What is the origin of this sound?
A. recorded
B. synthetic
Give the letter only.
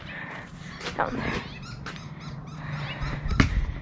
A